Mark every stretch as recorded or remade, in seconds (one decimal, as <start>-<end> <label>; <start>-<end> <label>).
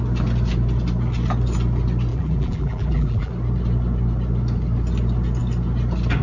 0.0-2.1 recorded; 2.1-3.3 remade; 3.3-6.2 recorded